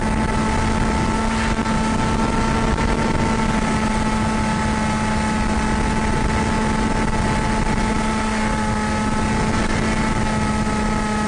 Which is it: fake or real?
real